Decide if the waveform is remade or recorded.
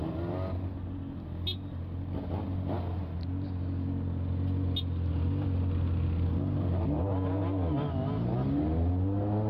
recorded